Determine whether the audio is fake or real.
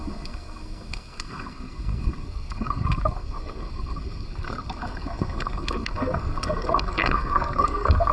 fake